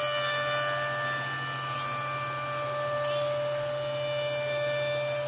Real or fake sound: real